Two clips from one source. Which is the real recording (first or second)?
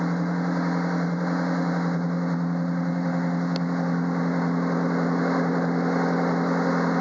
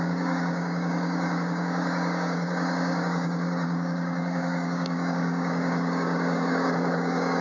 first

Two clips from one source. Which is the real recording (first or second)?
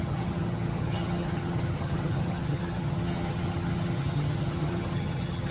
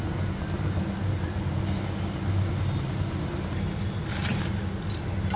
second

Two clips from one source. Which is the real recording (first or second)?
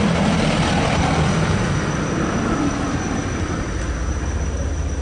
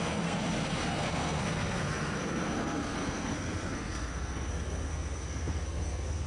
first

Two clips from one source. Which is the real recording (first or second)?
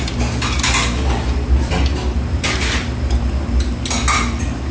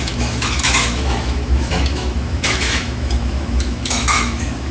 first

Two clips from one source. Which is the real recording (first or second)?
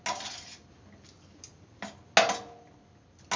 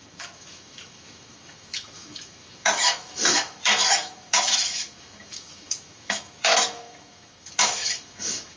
first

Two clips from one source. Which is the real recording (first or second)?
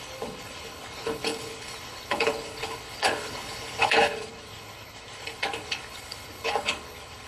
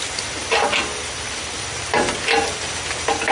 second